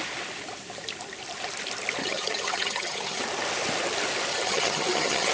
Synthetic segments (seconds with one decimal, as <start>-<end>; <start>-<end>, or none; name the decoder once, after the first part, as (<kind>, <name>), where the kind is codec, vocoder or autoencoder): 2.0-3.2 (vocoder, HiFi-GAN); 4.3-5.3